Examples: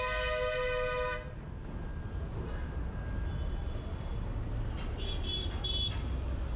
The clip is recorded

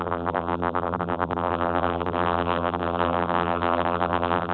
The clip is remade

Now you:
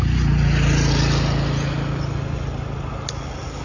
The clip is recorded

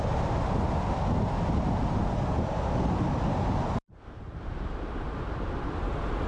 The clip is recorded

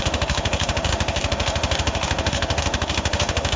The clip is remade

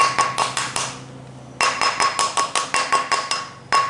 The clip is recorded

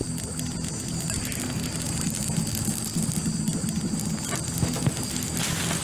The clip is recorded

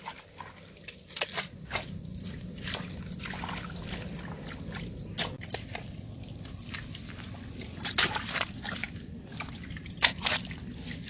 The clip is recorded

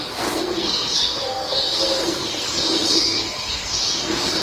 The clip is remade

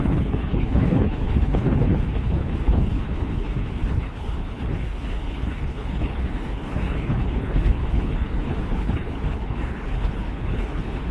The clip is remade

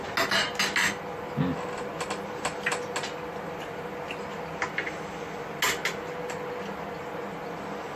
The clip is recorded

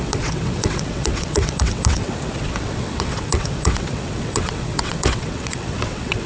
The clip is remade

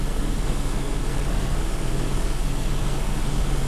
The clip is remade